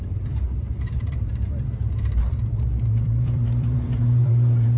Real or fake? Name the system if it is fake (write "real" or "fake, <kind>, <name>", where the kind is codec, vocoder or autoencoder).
fake, vocoder, BigVGAN v2